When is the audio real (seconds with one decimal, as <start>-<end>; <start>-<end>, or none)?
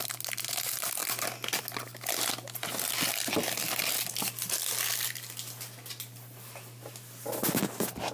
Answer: 0.0-8.1